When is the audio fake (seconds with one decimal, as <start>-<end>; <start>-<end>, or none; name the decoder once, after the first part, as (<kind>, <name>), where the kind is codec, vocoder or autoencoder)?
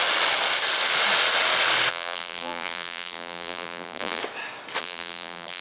1.9-4.2 (vocoder, BigVGAN v2); 4.8-5.6